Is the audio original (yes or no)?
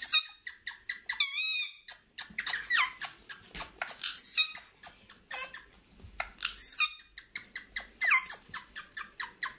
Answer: yes